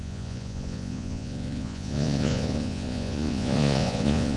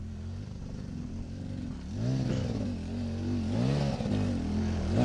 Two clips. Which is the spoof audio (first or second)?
first